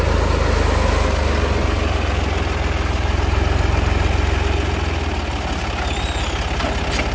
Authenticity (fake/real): real